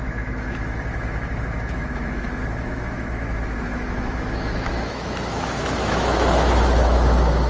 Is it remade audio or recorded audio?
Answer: remade